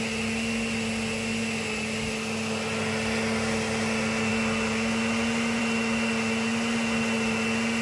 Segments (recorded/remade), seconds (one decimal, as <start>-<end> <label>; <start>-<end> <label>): 0.0-7.8 recorded